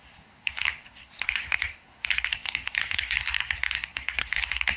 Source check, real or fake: fake